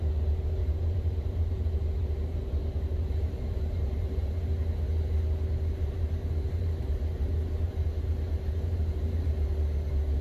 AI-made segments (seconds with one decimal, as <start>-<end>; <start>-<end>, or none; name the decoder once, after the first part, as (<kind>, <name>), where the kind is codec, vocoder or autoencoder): 0.6-4.3 (vocoder, BigVGAN v2); 5.8-9.3